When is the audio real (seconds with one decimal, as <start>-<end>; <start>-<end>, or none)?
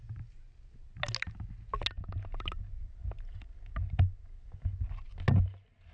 0.0-5.9